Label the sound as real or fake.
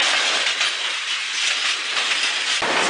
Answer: real